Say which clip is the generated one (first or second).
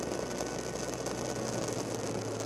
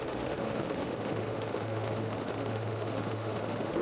second